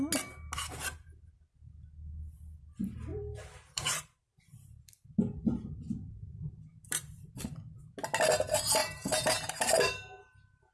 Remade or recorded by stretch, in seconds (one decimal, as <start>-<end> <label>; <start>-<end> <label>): 0.0-3.1 recorded; 3.1-7.4 remade; 7.4-8.8 recorded; 8.8-9.6 remade; 9.6-10.7 recorded